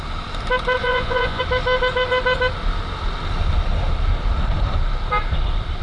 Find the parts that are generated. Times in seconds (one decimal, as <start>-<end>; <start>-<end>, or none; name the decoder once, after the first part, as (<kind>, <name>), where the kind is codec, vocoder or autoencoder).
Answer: 0.8-1.4 (vocoder, Vocos)